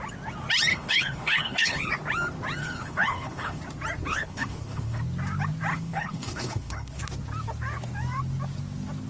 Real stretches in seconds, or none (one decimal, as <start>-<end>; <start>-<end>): 0.0-0.7; 1.9-2.6; 3.6-4.1; 5.0-5.7; 7.0-9.1

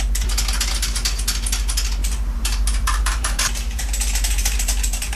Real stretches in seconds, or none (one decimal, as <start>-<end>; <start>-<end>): 0.0-2.0

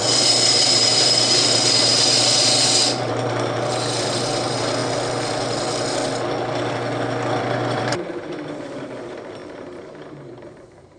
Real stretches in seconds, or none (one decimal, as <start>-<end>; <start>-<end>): 4.8-7.4

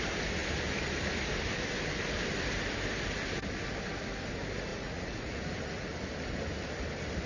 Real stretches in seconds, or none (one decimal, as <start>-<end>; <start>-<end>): 0.0-4.7; 5.4-7.3

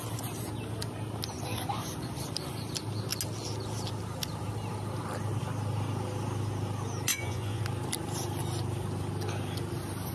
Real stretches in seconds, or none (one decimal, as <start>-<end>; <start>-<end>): 0.0-7.1; 7.6-10.1

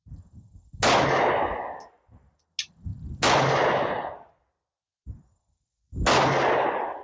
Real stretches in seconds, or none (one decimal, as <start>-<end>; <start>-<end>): 0.0-7.0